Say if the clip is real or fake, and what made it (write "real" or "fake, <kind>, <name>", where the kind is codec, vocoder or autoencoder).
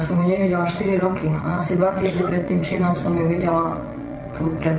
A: fake, vocoder, Vocos